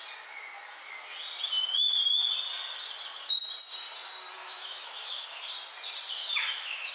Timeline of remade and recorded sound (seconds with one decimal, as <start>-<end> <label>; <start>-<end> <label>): 0.0-4.4 recorded; 4.4-5.2 remade; 5.2-6.2 recorded; 6.2-6.9 remade